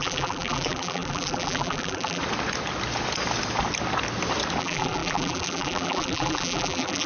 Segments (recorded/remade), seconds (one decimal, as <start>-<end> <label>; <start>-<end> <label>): 0.0-2.2 remade; 2.2-4.6 recorded; 4.6-7.1 remade